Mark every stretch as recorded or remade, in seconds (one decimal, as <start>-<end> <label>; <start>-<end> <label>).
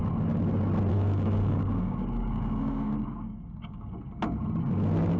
0.0-0.9 recorded; 0.9-4.0 remade; 4.0-5.2 recorded